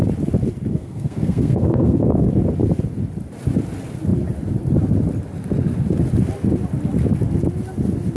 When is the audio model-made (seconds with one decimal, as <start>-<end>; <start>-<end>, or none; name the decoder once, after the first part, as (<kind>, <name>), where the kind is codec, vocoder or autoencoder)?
0.7-2.3 (codec, SNAC)

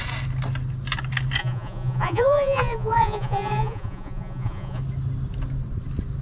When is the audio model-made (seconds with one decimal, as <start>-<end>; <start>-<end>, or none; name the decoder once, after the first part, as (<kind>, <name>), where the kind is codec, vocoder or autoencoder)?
1.4-4.8 (vocoder, Vocos)